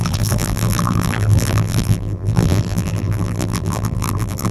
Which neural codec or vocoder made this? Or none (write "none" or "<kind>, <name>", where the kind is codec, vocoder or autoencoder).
vocoder, BigVGAN v2